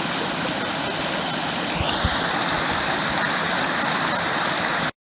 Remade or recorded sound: recorded